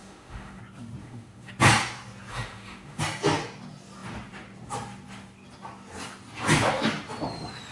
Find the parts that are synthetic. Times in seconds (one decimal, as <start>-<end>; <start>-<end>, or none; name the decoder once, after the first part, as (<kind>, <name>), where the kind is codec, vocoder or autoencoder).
0.0-0.6 (autoencoder, DAC-VAE); 1.0-1.5; 2.3-3.0

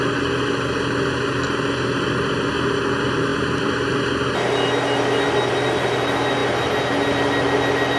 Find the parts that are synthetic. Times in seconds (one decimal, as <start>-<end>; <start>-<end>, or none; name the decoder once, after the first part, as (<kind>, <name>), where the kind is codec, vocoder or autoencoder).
none

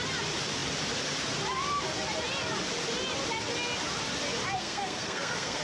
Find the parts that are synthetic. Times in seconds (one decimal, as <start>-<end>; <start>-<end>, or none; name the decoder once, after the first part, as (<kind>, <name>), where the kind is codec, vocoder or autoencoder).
4.6-5.6 (codec, SNAC)

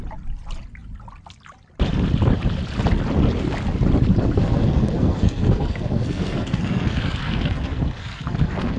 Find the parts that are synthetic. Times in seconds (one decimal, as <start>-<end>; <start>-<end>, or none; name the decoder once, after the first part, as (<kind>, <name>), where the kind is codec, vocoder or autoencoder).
4.2-8.8 (codec, SNAC)

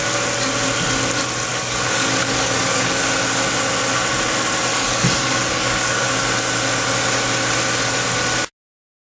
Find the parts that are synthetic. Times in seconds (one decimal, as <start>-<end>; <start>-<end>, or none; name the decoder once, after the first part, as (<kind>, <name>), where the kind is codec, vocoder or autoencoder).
1.5-3.0 (codec, DAC); 4.7-6.1

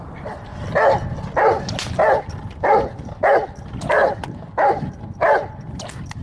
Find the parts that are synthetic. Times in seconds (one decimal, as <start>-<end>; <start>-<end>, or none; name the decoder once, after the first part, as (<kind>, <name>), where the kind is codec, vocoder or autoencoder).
0.0-0.5 (vocoder, BigVGAN v2); 2.2-6.2